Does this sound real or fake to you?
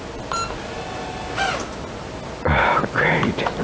real